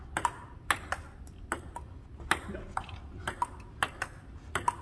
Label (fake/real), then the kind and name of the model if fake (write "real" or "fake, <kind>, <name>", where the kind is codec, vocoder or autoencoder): real